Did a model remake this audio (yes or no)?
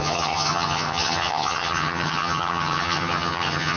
yes